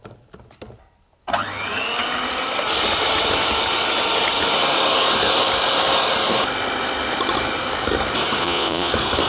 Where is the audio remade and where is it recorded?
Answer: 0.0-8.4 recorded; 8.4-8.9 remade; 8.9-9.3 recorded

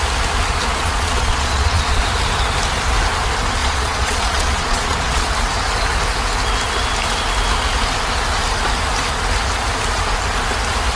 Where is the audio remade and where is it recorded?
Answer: 0.0-0.7 recorded; 0.7-2.0 remade; 2.0-3.6 recorded; 3.6-5.3 remade; 5.3-11.0 recorded